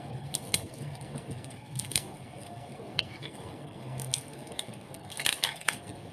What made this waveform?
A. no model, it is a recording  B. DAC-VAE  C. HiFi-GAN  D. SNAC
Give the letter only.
D